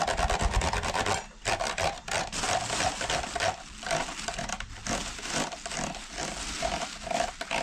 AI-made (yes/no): no